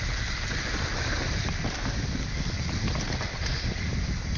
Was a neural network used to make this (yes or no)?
no